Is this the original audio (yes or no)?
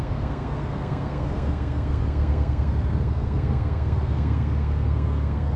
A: no